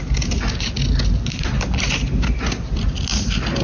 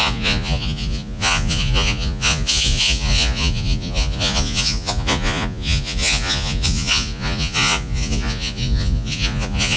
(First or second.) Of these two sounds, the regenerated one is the second